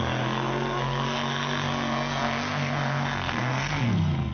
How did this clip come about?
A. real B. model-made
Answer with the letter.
B